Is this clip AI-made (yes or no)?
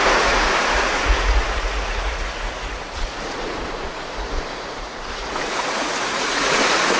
yes